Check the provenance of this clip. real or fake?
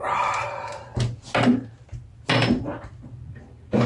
real